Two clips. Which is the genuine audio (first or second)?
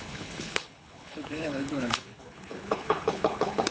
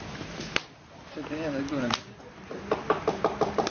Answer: second